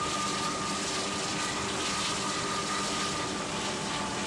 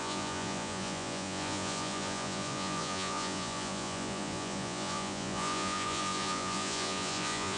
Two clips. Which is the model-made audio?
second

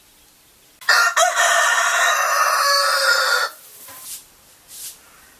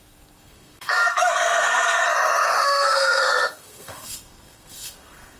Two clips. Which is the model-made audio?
second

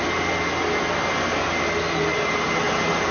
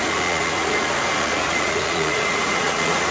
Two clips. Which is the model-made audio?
second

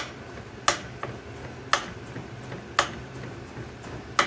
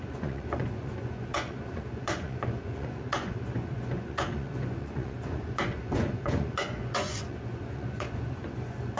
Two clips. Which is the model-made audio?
second